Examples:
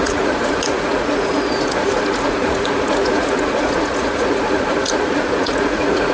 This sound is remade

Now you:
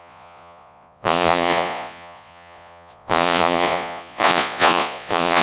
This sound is remade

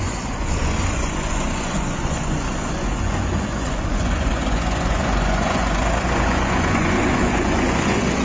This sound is remade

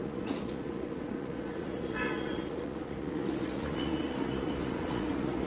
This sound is remade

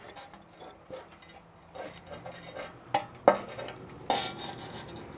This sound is recorded